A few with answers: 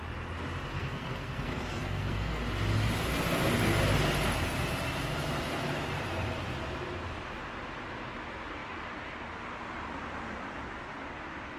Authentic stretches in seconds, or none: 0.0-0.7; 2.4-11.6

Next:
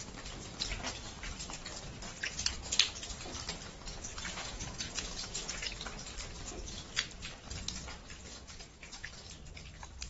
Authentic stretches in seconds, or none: 0.0-4.1; 5.6-8.3; 9.1-10.1